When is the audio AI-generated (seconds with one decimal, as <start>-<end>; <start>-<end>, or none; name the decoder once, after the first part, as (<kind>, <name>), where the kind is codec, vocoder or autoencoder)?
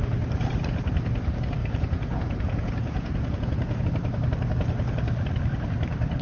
1.6-3.8 (vocoder, Vocos)